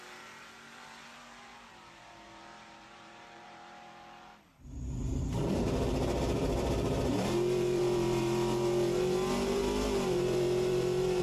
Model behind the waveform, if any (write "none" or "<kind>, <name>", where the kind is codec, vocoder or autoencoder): vocoder, BigVGAN v2